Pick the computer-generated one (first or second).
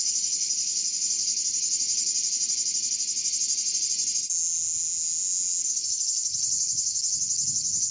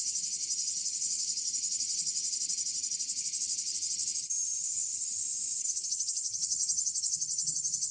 second